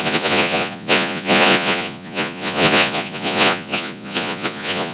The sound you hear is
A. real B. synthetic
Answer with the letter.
B